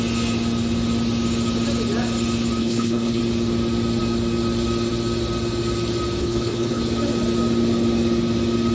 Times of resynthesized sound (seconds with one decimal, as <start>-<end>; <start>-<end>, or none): 2.6-3.2; 6.2-6.8